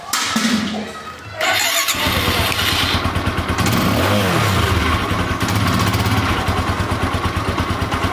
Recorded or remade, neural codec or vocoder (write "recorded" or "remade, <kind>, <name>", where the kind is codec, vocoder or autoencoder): recorded